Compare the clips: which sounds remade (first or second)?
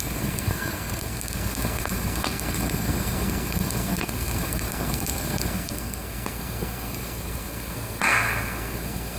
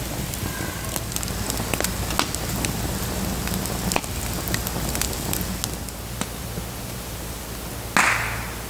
first